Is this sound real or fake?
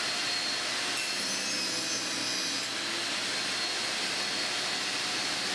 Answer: real